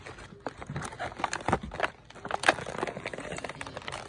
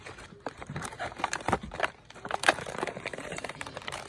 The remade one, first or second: second